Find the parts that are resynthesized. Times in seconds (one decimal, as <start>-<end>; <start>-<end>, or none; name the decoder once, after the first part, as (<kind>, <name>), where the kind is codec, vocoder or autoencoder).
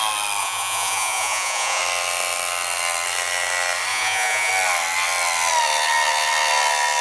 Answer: 0.4-1.8 (vocoder, Vocos); 3.9-4.5